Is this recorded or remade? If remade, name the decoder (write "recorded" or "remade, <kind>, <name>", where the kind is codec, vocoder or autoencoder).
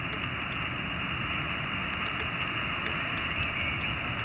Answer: recorded